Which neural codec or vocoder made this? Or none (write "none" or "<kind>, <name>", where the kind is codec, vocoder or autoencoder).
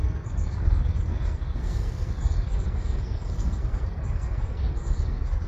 codec, SNAC